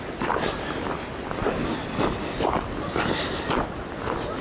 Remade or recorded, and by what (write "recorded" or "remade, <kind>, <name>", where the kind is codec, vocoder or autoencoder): recorded